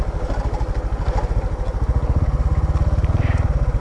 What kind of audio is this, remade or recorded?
recorded